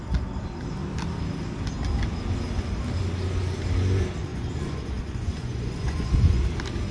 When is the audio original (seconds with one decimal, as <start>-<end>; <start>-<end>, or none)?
0.0-4.3; 6.4-6.9